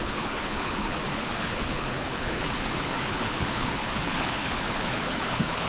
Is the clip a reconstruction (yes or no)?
yes